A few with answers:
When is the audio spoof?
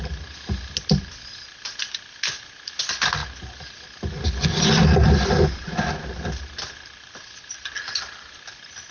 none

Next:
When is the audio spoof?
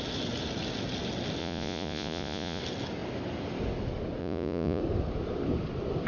1.4-2.6 (vocoder, Vocos); 4.2-4.8